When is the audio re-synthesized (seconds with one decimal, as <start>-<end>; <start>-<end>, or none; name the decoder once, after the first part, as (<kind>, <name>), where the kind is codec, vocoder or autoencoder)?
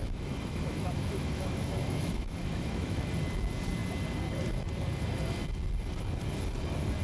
0.0-3.1 (autoencoder, DAC-VAE)